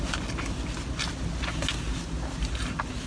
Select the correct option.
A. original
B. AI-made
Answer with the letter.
A